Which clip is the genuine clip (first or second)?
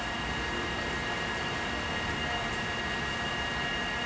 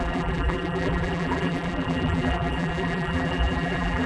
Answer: first